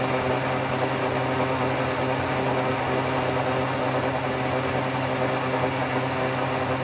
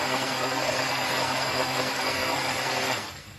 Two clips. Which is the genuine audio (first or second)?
first